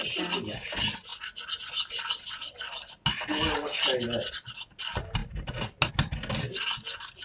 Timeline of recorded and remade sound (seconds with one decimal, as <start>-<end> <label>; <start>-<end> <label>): 0.0-7.2 recorded